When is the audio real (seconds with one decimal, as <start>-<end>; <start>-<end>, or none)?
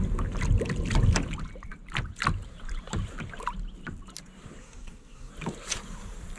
0.0-4.6; 5.3-6.4